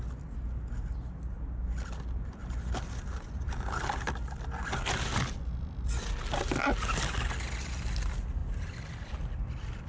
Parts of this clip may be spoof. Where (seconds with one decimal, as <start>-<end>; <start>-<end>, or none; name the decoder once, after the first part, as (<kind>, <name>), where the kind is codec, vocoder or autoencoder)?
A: none